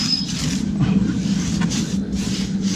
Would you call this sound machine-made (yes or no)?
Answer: no